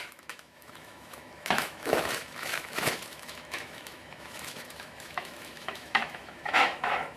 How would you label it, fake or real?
fake